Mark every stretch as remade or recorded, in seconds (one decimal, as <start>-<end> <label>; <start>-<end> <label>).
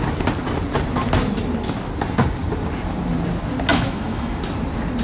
0.0-3.7 recorded; 3.7-4.4 remade; 4.4-5.0 recorded